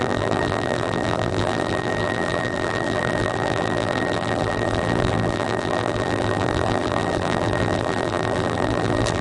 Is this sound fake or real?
fake